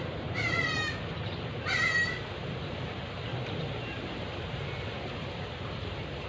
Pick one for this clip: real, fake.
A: fake